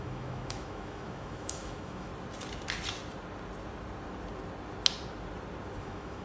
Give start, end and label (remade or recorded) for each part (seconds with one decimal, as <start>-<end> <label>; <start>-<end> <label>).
0.0-2.1 remade; 2.1-5.8 recorded; 5.8-6.2 remade